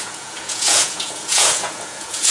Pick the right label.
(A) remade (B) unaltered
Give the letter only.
A